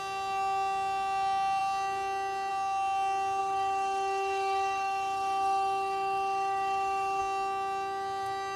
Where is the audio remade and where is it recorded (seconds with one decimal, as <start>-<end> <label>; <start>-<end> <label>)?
0.0-3.4 recorded; 3.4-7.2 remade; 7.2-8.6 recorded